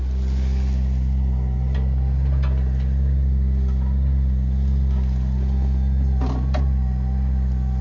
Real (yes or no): yes